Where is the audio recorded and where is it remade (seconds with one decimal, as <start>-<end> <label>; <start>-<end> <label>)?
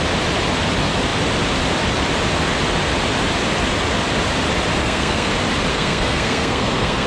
0.0-4.8 recorded; 4.8-5.3 remade; 5.3-5.7 recorded; 5.7-7.1 remade